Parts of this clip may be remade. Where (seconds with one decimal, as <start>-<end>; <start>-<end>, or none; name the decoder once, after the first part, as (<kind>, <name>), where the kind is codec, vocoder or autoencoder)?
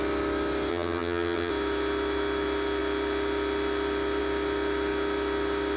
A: 0.7-1.5 (vocoder, HiFi-GAN)